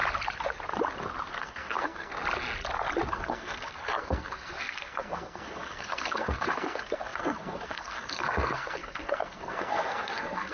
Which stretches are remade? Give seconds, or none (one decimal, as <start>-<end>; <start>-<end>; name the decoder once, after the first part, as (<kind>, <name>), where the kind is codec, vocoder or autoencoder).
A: 1.4-2.1 (codec, SNAC); 3.1-10.5